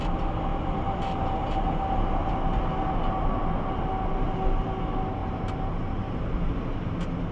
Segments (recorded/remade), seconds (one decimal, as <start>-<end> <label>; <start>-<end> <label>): 0.0-0.5 recorded; 0.5-2.6 remade; 2.6-5.2 recorded; 5.2-6.3 remade; 6.3-7.3 recorded